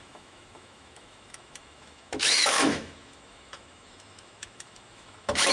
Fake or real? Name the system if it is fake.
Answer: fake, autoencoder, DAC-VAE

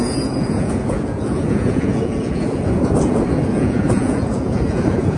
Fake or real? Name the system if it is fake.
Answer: fake, vocoder, Vocos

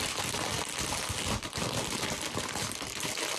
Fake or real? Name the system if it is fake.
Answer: real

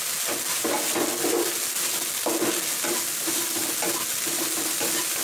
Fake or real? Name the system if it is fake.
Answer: real